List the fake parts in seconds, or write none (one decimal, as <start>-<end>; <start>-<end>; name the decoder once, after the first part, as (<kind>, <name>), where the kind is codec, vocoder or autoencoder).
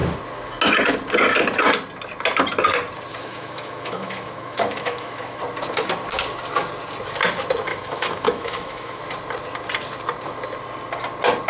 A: 3.1-5.4 (autoencoder, DAC-VAE); 7.7-9.0